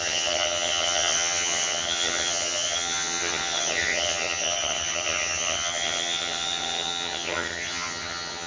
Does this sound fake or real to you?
fake